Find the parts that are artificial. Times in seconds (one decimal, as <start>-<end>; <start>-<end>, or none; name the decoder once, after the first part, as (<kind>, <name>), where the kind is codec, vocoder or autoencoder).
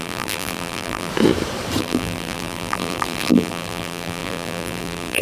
0.0-1.1 (vocoder, BigVGAN v2); 1.8-5.2